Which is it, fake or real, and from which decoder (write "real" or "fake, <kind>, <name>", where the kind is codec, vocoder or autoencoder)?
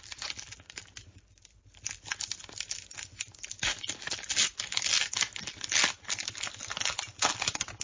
real